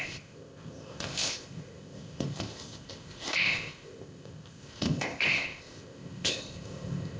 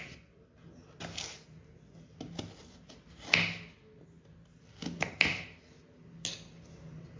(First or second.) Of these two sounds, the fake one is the first